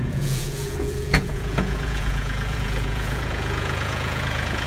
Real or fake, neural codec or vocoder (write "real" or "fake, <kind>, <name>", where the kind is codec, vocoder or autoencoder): fake, vocoder, Vocos